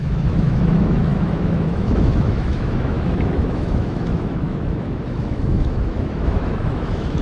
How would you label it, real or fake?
fake